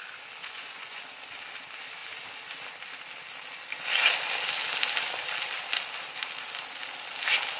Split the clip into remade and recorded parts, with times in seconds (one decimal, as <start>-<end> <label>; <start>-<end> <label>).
0.0-0.4 recorded; 0.4-1.0 remade; 1.0-7.6 recorded

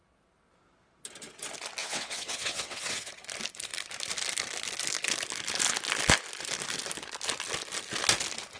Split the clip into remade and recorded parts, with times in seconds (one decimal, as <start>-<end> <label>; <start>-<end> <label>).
0.0-1.8 recorded; 1.8-3.1 remade; 3.1-8.6 recorded